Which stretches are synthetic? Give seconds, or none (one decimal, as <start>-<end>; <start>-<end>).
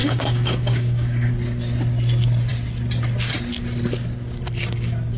0.0-1.3